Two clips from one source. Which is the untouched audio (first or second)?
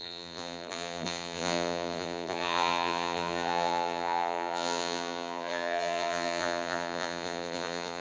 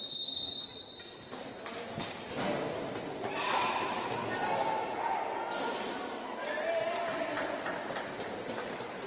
second